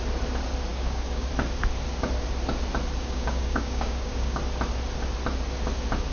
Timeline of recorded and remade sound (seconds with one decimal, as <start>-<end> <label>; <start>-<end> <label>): 0.0-0.7 recorded; 0.7-1.3 remade; 1.3-3.0 recorded; 3.0-4.4 remade; 4.4-6.1 recorded